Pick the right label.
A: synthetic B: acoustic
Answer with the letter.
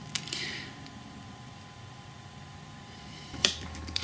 A